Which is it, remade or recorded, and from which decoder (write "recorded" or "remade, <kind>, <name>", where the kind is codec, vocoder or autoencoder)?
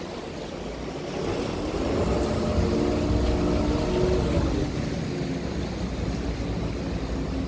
recorded